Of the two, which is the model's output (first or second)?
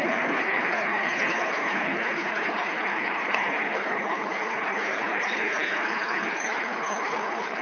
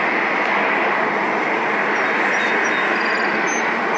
first